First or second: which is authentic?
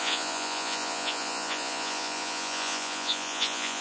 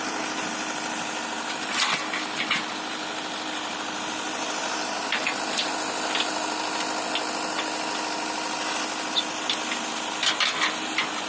second